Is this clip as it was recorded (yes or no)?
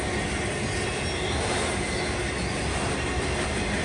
yes